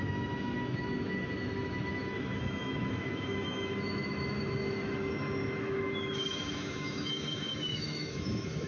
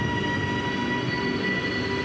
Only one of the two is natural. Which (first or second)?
second